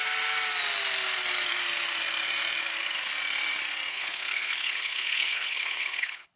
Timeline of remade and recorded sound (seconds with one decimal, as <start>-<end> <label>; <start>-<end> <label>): 0.0-3.9 recorded; 3.9-6.4 remade